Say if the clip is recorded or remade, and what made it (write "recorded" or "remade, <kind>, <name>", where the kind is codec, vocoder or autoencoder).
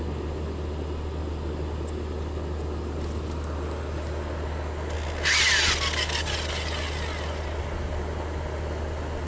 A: recorded